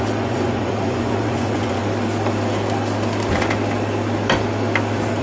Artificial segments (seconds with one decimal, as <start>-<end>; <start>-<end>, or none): 0.0-1.8